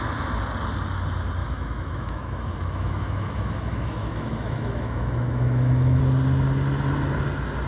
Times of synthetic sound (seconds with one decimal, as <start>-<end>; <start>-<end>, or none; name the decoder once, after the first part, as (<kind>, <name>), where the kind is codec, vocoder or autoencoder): 1.4-6.0 (autoencoder, DAC-VAE)